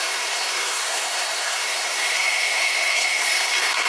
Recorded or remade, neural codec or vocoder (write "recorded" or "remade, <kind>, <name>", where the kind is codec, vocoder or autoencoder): remade, codec, SNAC